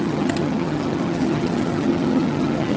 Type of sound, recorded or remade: remade